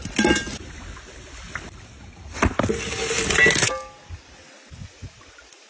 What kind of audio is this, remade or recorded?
recorded